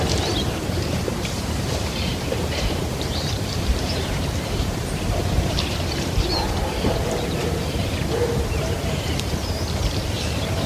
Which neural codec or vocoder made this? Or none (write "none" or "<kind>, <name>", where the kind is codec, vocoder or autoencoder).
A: vocoder, BigVGAN v2